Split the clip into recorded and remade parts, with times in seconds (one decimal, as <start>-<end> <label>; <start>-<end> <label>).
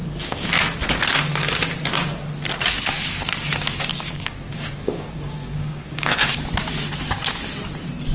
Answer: 0.0-0.5 remade; 0.5-3.9 recorded; 3.9-6.4 remade; 6.4-8.1 recorded